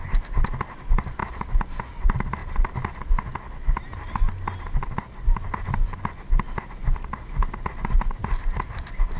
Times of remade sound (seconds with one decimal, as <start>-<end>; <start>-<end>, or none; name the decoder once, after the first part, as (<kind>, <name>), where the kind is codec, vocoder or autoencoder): none